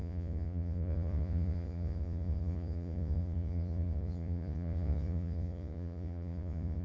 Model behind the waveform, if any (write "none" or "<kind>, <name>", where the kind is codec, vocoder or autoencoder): vocoder, Vocos